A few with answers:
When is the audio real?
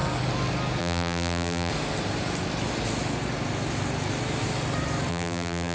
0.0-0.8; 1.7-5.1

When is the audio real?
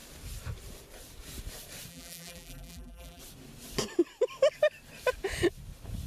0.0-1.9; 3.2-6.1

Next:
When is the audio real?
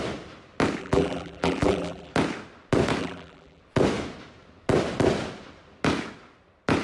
0.0-0.8; 2.1-3.0; 3.6-6.8